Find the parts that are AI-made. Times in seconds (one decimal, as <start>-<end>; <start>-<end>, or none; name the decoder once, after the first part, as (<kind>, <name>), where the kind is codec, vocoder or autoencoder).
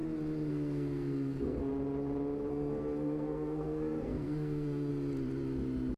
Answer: 0.5-1.7 (codec, SNAC); 2.5-4.9